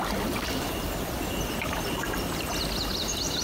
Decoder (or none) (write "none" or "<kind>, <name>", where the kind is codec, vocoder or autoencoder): none